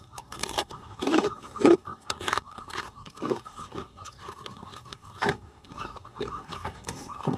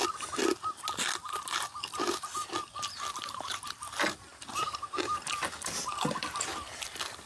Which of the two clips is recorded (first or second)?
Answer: second